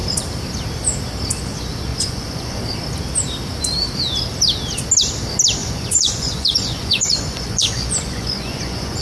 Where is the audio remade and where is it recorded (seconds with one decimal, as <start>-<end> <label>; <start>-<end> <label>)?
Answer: 0.0-1.9 recorded; 1.9-2.6 remade; 2.6-5.6 recorded; 5.6-9.0 remade